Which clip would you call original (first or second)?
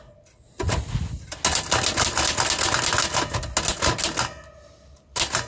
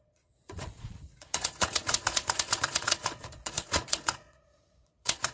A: first